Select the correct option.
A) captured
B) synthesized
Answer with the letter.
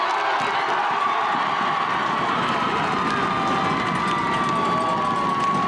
A